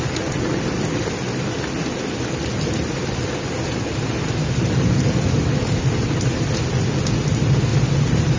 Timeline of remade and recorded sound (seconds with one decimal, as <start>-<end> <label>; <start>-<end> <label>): 0.0-7.7 recorded; 7.7-8.4 remade